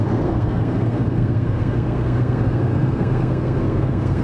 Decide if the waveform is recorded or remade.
remade